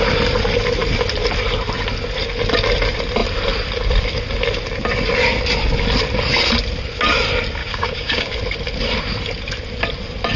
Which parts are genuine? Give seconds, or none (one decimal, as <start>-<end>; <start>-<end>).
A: 0.0-7.6; 8.4-10.4